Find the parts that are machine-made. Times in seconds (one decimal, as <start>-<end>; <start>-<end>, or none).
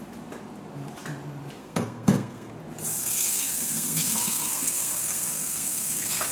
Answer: 1.6-2.5; 3.0-6.3